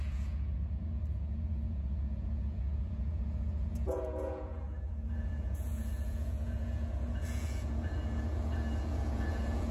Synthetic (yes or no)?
yes